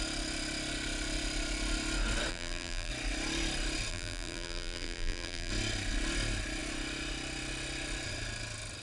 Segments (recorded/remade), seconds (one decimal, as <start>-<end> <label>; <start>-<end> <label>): 0.0-2.3 recorded; 2.3-2.9 remade; 2.9-3.9 recorded; 3.9-5.5 remade; 5.5-8.8 recorded